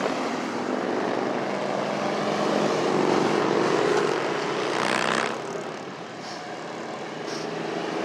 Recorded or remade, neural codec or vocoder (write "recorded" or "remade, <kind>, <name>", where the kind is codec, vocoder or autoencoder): recorded